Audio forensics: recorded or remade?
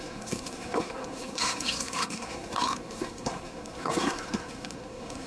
remade